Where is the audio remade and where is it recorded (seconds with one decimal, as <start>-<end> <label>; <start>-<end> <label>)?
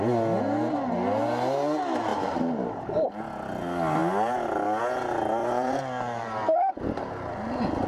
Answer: 0.0-2.1 recorded; 2.1-3.1 remade; 3.1-5.4 recorded; 5.4-6.7 remade; 6.7-7.9 recorded